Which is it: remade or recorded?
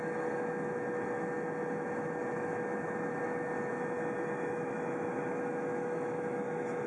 remade